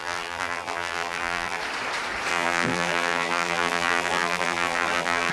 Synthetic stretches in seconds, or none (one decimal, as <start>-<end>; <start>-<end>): 0.0-1.6; 2.3-5.3